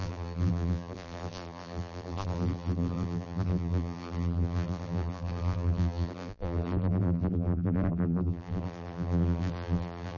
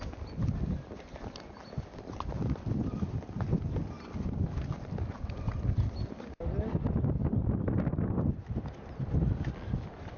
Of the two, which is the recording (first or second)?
second